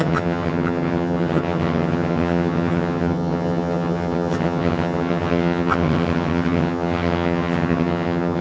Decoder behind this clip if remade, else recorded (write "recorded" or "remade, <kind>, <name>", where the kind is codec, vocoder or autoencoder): remade, vocoder, HiFi-GAN